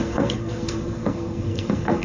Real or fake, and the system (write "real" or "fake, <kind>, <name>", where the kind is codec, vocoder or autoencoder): fake, codec, SNAC